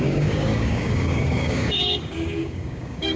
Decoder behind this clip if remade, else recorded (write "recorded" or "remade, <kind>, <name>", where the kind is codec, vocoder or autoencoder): remade, codec, DAC